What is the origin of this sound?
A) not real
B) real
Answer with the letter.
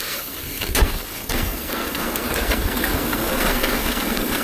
A